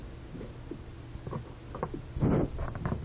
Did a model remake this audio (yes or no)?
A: no